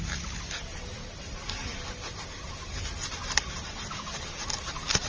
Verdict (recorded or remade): recorded